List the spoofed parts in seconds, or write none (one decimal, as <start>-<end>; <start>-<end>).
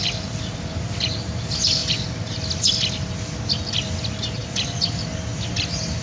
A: none